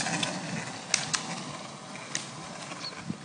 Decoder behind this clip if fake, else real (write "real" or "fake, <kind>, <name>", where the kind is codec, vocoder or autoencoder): real